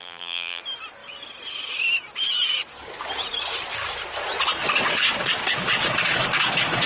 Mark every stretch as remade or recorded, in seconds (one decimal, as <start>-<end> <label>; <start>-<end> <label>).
0.0-0.6 remade; 0.6-6.9 recorded